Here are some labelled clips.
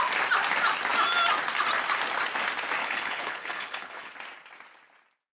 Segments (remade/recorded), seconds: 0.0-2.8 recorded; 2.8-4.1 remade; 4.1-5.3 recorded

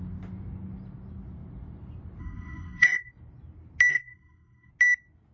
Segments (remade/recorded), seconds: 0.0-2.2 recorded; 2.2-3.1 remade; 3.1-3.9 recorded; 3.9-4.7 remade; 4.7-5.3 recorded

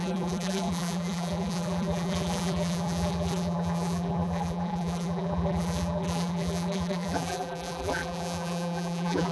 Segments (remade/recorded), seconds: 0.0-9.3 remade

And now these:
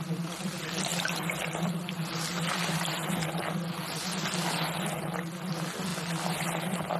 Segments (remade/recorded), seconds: 0.0-7.0 recorded

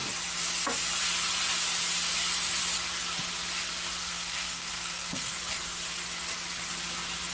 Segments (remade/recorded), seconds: 0.0-4.0 recorded; 4.0-5.3 remade; 5.3-7.3 recorded

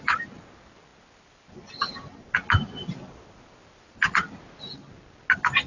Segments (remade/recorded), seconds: 0.0-5.7 recorded